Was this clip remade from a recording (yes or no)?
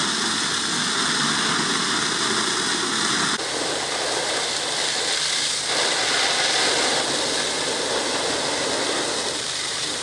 no